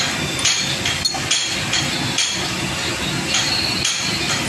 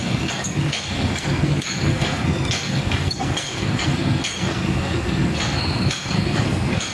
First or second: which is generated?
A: second